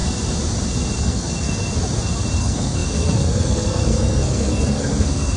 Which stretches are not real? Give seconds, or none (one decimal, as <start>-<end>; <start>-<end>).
1.0-1.7; 2.4-5.4